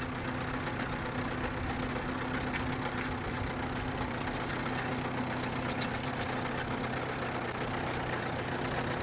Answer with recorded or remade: recorded